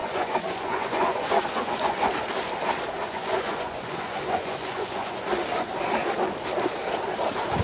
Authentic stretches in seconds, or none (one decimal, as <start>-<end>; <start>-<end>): 2.1-3.0; 5.2-7.6

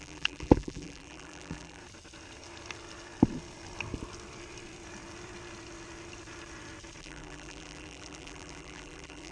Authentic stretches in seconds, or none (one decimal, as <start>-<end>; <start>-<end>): 1.8-7.0